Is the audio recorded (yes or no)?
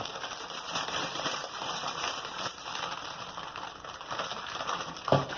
no